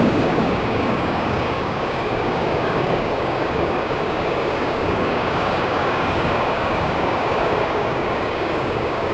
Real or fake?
fake